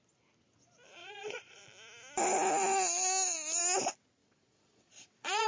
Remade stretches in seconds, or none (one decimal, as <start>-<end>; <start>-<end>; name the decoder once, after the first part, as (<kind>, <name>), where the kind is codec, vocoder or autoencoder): 1.0-1.6 (vocoder, Vocos); 4.2-5.5